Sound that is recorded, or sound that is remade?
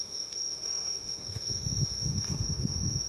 remade